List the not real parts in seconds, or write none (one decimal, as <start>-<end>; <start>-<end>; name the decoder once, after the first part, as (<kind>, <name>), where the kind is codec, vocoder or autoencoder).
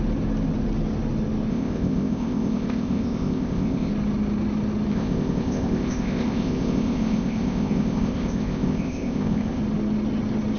1.5-3.9 (codec, ZipCodec); 4.9-9.6